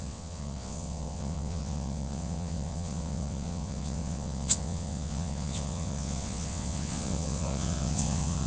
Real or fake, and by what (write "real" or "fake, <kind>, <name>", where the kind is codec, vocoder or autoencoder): fake, vocoder, WaveNeXt